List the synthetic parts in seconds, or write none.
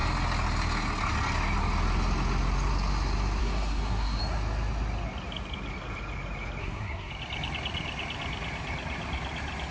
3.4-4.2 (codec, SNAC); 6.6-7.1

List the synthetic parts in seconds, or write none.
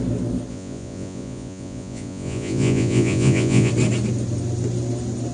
0.5-3.7 (vocoder, Vocos)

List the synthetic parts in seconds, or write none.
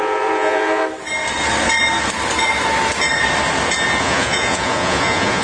0.0-0.8 (vocoder, Vocos); 4.0-5.4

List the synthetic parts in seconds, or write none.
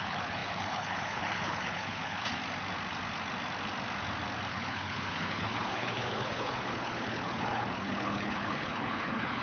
0.0-2.4 (codec, HILCodec); 4.5-9.4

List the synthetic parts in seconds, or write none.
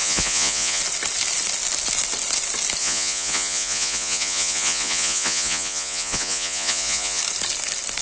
0.0-0.8 (vocoder, Vocos); 2.8-7.2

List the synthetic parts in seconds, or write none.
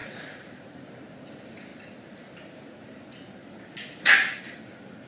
0.0-0.8 (vocoder, Vocos)